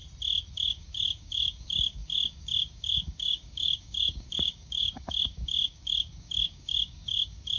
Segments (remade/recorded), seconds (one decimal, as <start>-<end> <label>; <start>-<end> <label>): 0.0-0.5 recorded; 0.5-7.6 remade